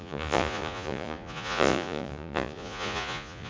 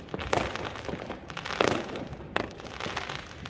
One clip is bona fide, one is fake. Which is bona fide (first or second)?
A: second